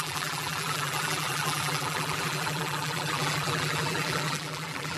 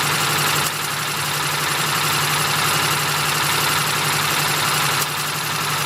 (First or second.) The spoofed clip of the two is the first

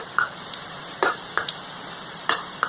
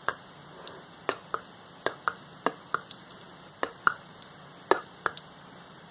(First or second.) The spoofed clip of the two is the first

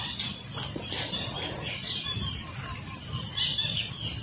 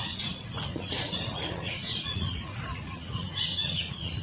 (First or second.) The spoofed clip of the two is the second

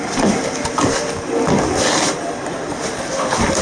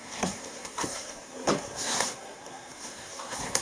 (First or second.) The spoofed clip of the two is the second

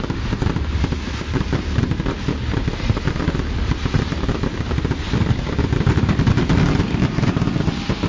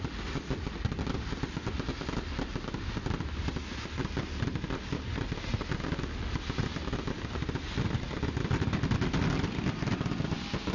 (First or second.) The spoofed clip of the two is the first